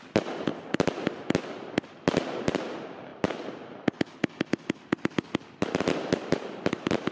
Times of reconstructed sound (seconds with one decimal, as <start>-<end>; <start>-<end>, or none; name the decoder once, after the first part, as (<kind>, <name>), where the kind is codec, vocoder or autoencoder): none